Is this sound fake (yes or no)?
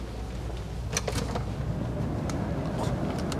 no